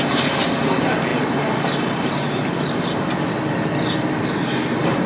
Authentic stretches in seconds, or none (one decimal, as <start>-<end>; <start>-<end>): 0.0-5.1